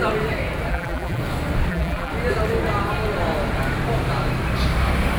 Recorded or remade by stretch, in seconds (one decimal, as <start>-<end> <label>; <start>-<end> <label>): 0.0-0.7 recorded; 0.7-1.2 remade; 1.2-1.7 recorded; 1.7-2.1 remade; 2.1-5.2 recorded